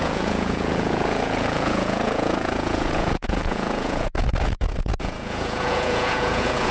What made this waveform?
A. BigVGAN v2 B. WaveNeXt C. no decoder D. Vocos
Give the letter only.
D